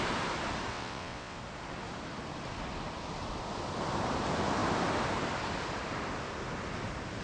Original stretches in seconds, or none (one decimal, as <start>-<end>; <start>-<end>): 0.0-0.7; 1.4-7.2